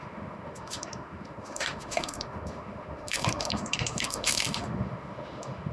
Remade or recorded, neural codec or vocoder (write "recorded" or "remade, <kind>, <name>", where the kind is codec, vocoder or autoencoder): remade, autoencoder, DAC-VAE